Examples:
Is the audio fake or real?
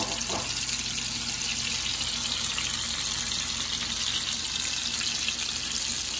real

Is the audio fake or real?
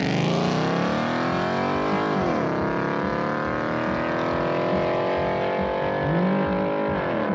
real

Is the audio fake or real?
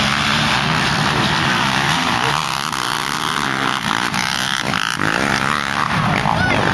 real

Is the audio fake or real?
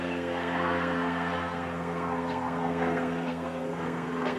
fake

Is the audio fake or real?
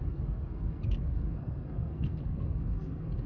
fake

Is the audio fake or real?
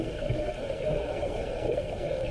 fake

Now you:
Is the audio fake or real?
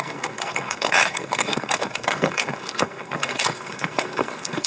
fake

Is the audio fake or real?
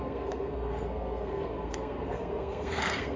fake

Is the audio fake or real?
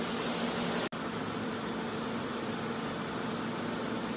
real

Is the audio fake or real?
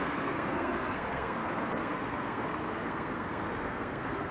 fake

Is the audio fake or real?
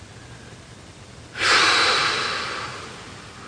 real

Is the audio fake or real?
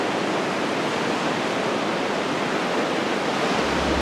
real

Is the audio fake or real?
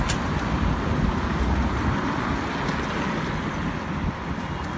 real